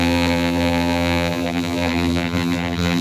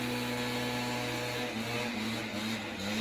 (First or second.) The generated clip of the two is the first